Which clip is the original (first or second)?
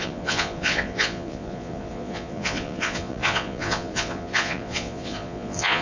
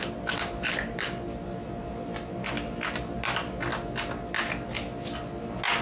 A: second